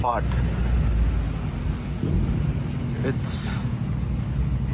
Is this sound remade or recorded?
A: recorded